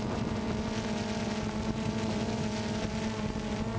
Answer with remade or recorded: recorded